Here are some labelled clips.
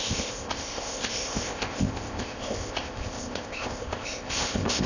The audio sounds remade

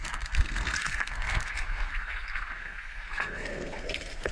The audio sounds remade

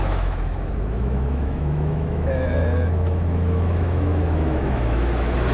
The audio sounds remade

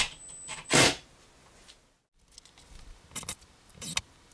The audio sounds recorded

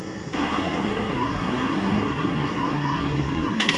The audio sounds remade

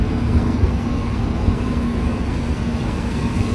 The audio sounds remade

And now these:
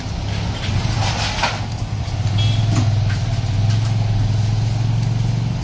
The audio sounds recorded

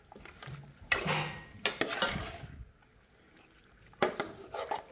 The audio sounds recorded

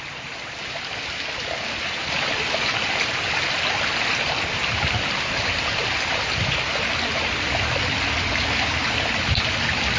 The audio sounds recorded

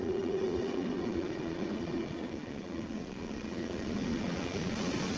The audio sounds remade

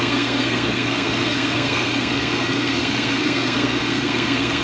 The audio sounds remade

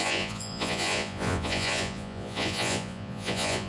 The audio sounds remade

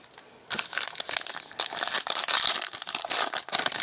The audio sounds recorded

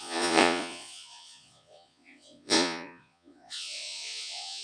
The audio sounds remade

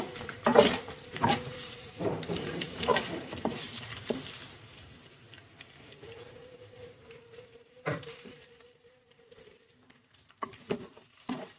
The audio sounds remade